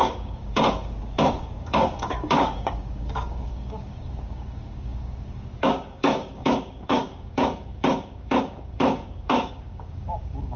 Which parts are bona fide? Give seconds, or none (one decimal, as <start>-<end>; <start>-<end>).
none